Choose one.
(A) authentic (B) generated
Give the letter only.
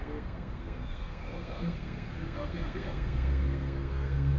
B